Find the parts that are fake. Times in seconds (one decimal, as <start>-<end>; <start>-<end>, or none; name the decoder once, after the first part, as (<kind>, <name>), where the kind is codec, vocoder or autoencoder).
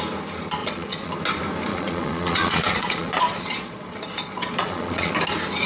0.6-1.1 (vocoder, Vocos); 1.7-5.1